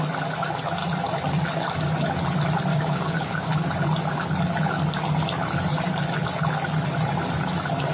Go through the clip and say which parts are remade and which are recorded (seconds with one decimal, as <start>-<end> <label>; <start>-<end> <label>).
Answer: 0.0-2.7 recorded; 2.7-3.5 remade; 3.5-7.9 recorded